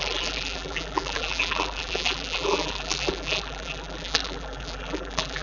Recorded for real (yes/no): no